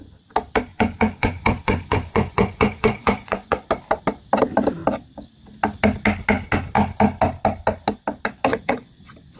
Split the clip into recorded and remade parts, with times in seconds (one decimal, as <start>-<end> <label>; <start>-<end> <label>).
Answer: 0.0-0.7 recorded; 0.7-3.7 remade; 3.7-8.5 recorded; 8.5-9.0 remade; 9.0-9.4 recorded